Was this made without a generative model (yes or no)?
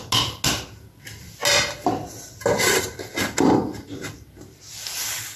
yes